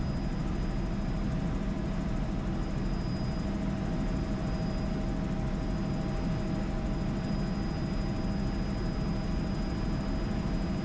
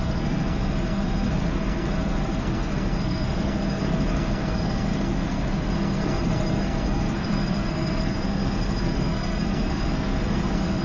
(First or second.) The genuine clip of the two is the first